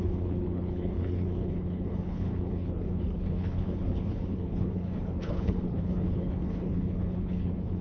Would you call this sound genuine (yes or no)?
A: no